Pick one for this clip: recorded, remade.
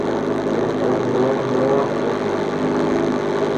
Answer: recorded